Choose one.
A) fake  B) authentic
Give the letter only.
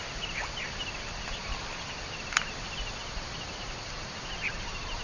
B